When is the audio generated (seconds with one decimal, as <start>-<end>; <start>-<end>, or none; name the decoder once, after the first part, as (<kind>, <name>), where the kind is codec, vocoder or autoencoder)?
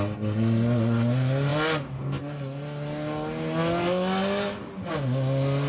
none